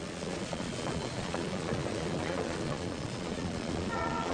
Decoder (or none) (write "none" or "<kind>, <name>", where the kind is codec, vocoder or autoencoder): vocoder, Vocos